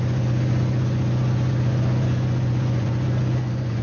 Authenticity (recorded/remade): remade